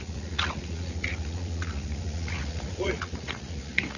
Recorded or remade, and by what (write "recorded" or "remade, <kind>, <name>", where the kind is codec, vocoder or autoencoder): remade, vocoder, Vocos